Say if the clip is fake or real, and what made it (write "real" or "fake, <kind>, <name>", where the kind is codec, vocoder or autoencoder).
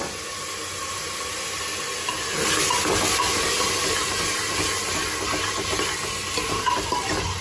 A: real